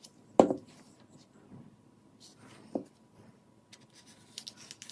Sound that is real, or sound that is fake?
real